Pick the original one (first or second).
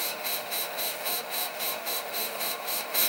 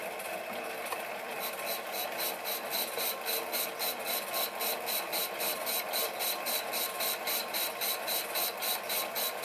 second